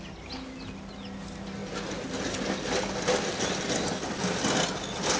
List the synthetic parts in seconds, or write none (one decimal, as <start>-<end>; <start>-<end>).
none